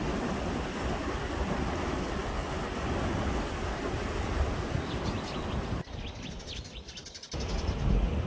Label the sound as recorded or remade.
recorded